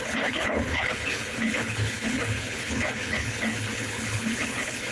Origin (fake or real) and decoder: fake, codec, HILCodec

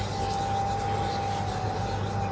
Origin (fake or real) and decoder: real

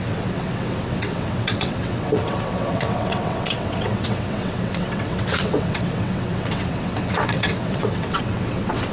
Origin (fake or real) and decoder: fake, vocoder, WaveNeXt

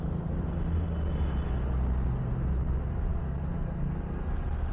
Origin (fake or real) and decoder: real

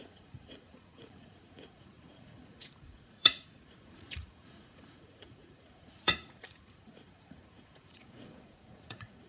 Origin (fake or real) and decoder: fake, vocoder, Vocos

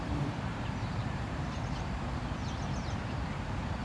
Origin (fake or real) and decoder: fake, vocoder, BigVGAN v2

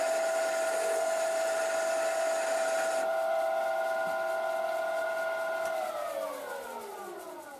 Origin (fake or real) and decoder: real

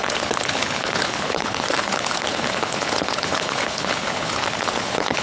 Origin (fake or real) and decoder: fake, codec, HILCodec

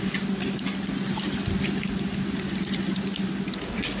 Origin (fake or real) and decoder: real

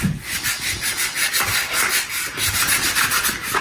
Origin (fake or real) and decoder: real